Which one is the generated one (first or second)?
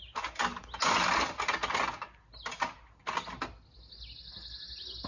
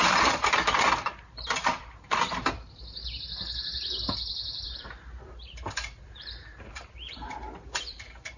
second